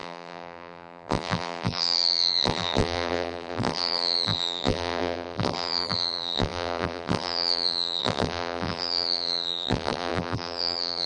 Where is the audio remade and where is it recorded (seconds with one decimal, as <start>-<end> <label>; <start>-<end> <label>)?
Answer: 0.0-11.1 remade